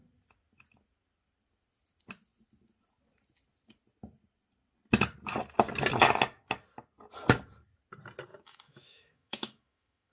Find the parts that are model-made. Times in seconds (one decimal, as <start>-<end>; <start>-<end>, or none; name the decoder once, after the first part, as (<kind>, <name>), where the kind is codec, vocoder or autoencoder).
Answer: 8.3-10.1 (autoencoder, DAC-VAE)